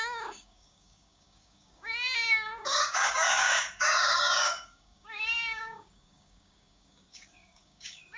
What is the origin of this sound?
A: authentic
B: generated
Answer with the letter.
B